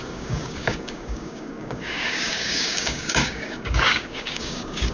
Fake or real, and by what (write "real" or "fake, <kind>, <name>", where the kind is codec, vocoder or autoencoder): fake, codec, DAC